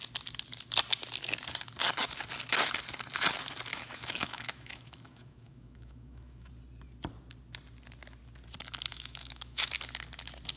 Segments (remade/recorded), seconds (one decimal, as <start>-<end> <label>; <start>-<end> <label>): 0.0-3.7 recorded; 3.7-6.5 remade; 6.5-8.9 recorded; 8.9-9.7 remade; 9.7-10.6 recorded